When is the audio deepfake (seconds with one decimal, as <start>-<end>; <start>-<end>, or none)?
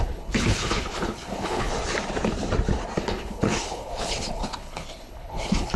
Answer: 0.0-1.7; 3.0-5.8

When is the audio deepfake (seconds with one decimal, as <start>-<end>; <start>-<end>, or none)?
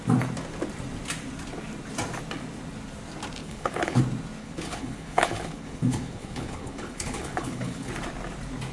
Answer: 3.4-4.0; 4.4-7.9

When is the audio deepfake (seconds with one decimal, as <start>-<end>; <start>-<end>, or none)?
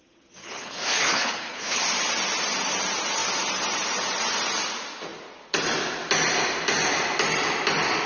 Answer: 0.4-1.8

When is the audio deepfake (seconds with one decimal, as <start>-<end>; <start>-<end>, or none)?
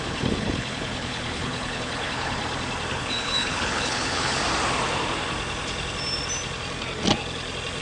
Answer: 0.0-2.4; 2.9-4.4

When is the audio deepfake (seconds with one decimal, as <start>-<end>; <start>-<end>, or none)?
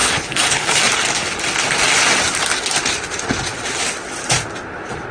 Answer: 0.0-0.8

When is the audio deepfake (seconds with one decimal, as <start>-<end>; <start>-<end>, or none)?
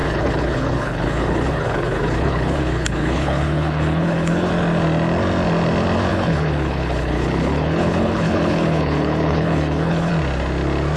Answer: 0.0-4.5; 6.1-10.1